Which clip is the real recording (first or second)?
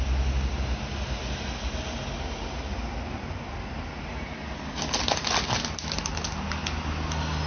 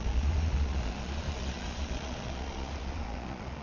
first